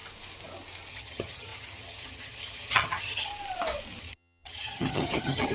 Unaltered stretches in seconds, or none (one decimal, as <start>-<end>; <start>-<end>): 0.0-0.9; 3.3-4.0